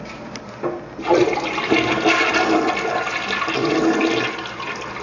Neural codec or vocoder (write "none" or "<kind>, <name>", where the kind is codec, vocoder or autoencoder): none